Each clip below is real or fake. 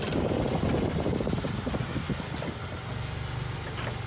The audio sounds real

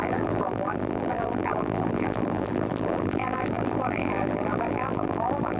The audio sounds fake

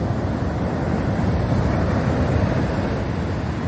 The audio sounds real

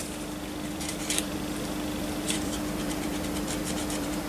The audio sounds fake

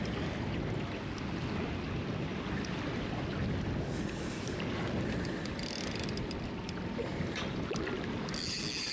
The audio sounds real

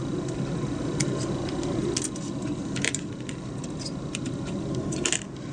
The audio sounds real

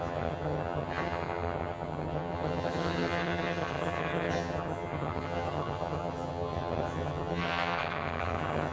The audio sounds fake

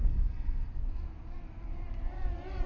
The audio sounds fake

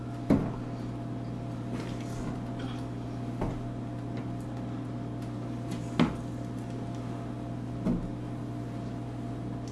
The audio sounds real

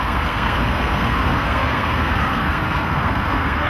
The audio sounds fake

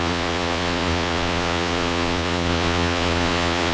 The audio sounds fake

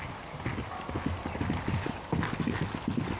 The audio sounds real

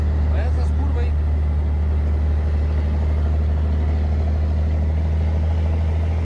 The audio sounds real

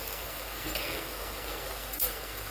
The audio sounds fake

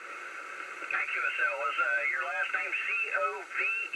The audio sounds real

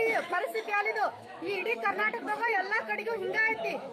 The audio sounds fake